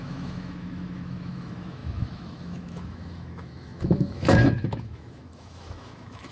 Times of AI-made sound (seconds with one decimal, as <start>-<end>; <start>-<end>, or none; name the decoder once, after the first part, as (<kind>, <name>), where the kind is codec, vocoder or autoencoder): 0.0-6.3 (autoencoder, DAC-VAE)